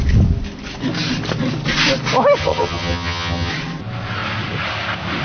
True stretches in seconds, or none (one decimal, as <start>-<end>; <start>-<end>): 0.0-2.4; 3.5-5.2